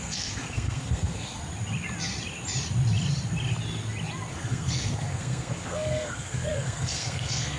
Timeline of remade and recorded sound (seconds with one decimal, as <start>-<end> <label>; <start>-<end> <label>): 0.0-1.4 remade; 1.4-4.3 recorded; 4.3-7.6 remade